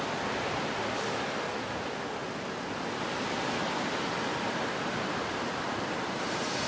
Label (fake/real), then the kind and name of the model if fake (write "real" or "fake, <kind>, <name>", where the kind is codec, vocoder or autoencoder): real